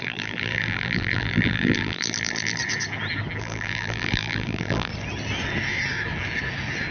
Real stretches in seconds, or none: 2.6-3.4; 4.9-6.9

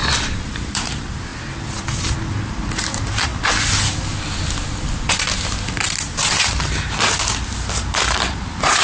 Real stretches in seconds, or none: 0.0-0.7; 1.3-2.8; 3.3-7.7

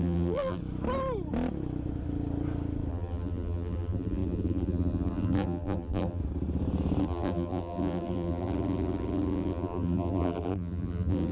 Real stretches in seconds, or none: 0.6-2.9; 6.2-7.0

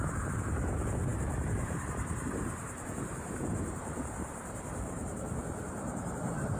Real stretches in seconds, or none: none